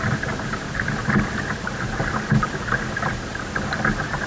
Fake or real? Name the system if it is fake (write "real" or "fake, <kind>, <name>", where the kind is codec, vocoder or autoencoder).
real